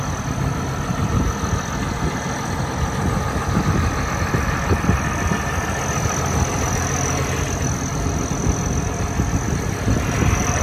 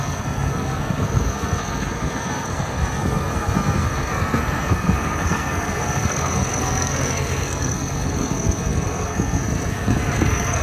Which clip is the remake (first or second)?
second